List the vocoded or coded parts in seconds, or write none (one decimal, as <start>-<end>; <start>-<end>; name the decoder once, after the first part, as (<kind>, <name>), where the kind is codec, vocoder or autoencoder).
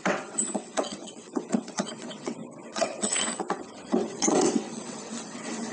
0.0-5.7 (vocoder, WaveNeXt)